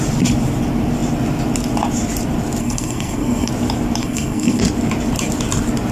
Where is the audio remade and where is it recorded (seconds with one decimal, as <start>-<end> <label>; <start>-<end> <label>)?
0.0-2.6 recorded; 2.6-3.5 remade; 3.5-4.0 recorded; 4.0-4.6 remade; 4.6-5.9 recorded